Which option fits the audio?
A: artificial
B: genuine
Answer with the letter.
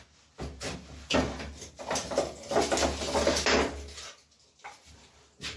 B